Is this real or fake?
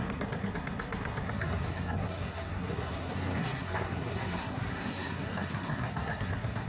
fake